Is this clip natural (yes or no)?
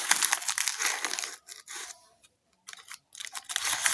yes